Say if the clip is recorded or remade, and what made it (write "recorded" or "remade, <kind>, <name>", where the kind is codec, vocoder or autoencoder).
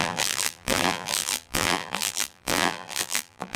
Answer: remade, vocoder, BigVGAN v2